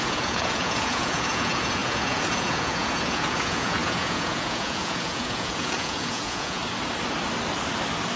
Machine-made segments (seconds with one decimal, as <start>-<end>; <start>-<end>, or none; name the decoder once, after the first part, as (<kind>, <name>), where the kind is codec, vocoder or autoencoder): 0.0-6.6 (vocoder, Vocos)